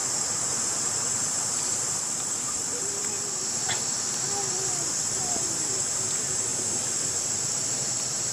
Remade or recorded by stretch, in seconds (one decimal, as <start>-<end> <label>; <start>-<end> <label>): 0.0-8.3 remade